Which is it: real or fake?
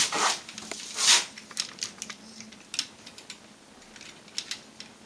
real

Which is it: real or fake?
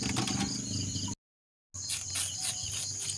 real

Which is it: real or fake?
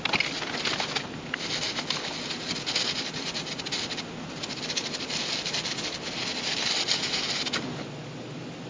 real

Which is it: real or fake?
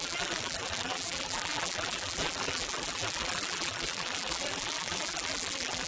fake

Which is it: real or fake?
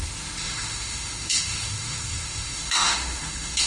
fake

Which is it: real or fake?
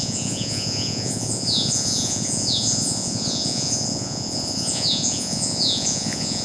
fake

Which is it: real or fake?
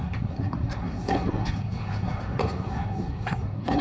fake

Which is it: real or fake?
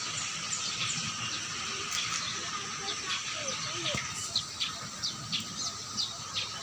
real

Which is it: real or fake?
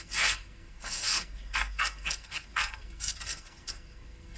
fake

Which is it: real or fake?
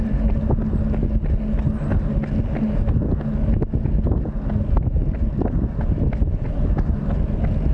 real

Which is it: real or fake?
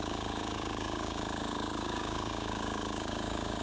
fake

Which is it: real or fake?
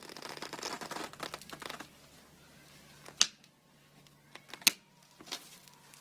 real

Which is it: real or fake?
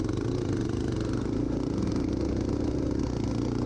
real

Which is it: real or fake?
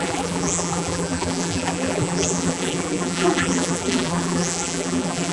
fake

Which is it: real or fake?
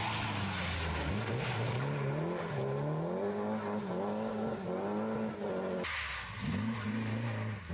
real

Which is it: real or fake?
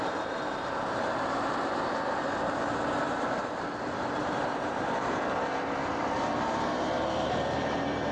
fake